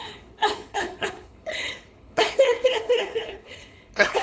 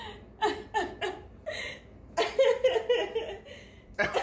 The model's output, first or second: first